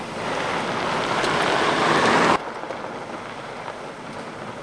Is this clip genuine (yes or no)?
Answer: yes